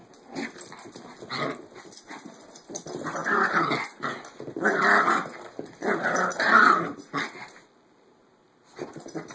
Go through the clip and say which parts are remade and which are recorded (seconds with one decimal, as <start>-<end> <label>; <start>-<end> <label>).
0.0-9.3 recorded

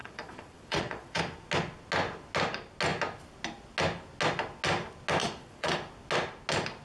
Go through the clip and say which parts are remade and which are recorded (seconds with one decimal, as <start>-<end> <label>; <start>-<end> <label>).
0.0-1.2 remade; 1.2-5.2 recorded; 5.2-5.7 remade; 5.7-6.8 recorded

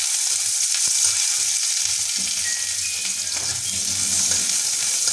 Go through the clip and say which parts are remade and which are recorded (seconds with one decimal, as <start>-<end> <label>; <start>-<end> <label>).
0.0-5.1 recorded

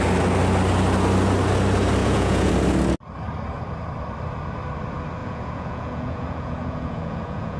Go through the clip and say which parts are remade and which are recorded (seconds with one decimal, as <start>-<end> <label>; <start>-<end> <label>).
0.0-2.0 recorded; 2.0-2.5 remade; 2.5-5.2 recorded; 5.2-7.6 remade

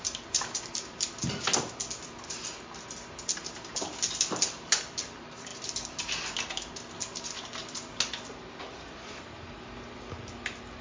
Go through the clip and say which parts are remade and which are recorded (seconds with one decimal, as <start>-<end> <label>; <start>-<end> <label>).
0.0-10.8 recorded